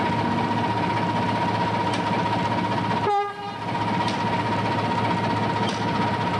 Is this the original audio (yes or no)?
yes